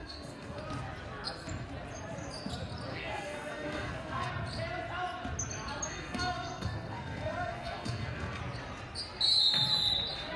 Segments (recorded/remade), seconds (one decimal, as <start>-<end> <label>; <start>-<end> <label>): 0.0-0.6 remade; 0.6-2.9 recorded; 2.9-4.3 remade; 4.3-5.9 recorded; 5.9-8.4 remade; 8.4-10.4 recorded